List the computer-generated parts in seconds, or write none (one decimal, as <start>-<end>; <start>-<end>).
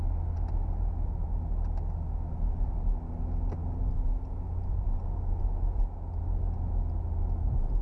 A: none